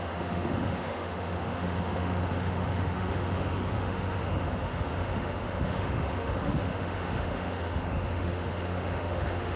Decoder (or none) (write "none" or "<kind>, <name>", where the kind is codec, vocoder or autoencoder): autoencoder, DAC-VAE